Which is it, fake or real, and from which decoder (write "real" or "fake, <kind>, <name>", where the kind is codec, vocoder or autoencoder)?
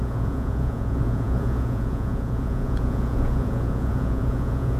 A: fake, vocoder, Vocos